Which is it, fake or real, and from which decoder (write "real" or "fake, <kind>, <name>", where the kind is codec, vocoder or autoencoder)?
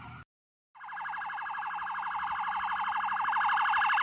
real